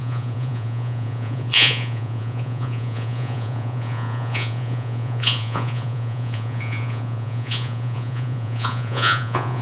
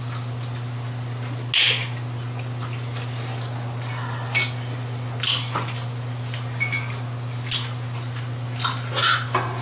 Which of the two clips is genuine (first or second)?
second